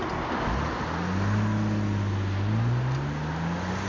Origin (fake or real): real